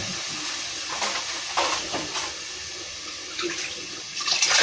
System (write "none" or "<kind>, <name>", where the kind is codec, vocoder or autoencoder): none